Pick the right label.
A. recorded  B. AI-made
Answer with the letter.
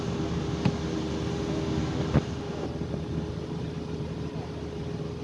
A